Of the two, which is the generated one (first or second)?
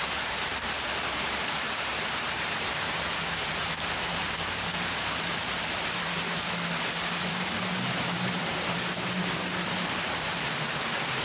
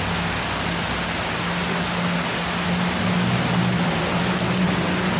first